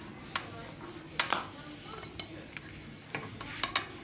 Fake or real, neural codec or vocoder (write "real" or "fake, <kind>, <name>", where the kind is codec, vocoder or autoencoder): real